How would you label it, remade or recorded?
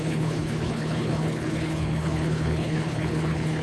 remade